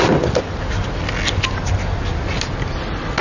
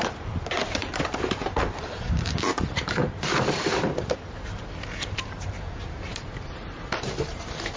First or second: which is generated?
second